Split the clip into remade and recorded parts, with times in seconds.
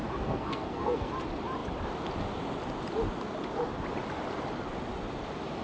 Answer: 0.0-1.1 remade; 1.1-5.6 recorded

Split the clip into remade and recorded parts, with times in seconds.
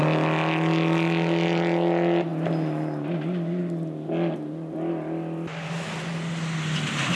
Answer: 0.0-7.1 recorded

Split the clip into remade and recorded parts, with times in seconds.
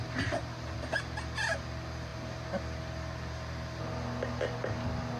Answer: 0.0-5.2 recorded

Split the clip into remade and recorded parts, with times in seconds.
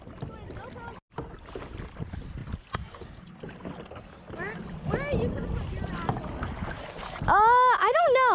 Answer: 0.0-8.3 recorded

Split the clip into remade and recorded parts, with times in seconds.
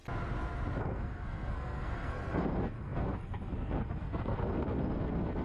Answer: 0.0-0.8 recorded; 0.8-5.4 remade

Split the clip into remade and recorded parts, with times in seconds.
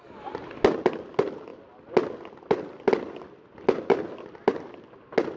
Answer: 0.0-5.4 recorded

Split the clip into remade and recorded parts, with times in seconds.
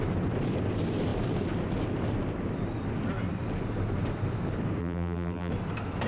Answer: 0.0-4.8 recorded; 4.8-5.5 remade; 5.5-6.1 recorded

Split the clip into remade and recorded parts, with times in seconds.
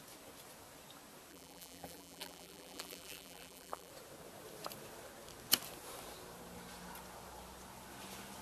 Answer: 0.0-1.3 recorded; 1.3-3.9 remade; 3.9-8.4 recorded